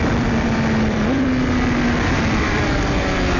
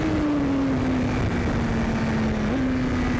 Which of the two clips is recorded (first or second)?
second